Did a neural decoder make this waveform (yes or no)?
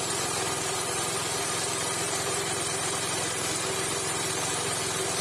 yes